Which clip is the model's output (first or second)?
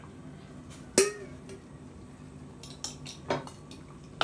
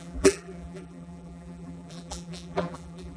second